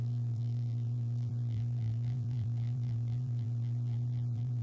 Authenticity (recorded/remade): remade